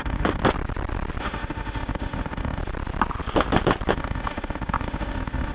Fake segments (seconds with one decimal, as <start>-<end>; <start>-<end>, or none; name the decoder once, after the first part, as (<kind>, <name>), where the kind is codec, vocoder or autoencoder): 0.0-0.4 (autoencoder, DAC-VAE); 1.2-2.6; 3.9-5.5